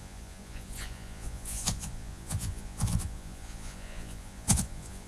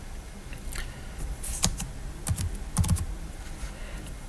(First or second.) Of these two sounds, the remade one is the first